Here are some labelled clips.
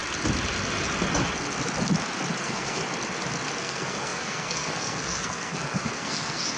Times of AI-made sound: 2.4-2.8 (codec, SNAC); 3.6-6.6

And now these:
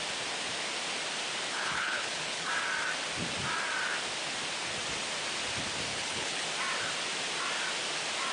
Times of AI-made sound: 1.5-2.5 (codec, HILCodec); 5.9-6.4

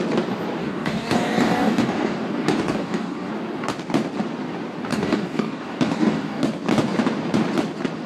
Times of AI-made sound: 0.6-3.3 (codec, DAC); 4.9-6.4

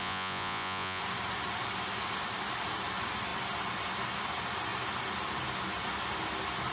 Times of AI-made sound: 0.0-1.0 (vocoder, Vocos)

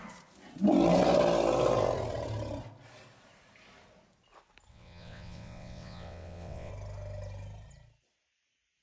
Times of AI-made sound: 4.7-6.7 (vocoder, WaveNeXt)

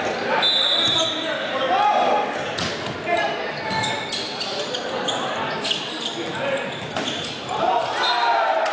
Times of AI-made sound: none